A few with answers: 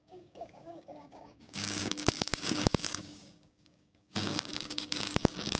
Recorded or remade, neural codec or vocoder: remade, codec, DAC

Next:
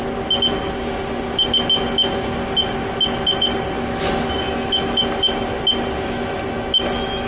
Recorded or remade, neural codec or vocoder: recorded